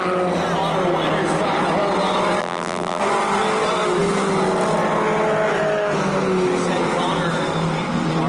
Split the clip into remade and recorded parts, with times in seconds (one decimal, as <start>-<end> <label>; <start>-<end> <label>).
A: 0.0-2.4 recorded; 2.4-3.0 remade; 3.0-8.3 recorded